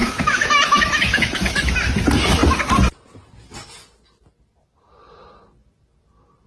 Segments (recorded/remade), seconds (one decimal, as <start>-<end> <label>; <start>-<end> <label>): 0.0-1.7 remade; 1.7-6.5 recorded